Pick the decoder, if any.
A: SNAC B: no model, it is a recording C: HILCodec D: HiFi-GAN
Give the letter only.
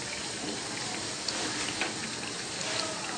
B